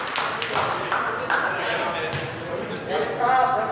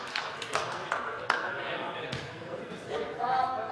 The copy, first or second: second